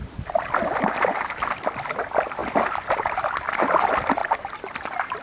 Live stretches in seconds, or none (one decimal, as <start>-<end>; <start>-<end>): 0.0-5.2